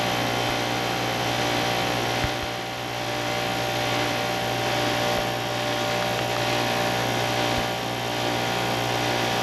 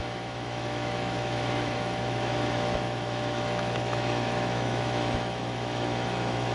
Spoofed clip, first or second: second